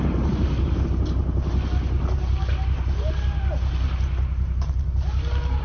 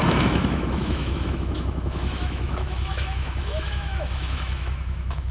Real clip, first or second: first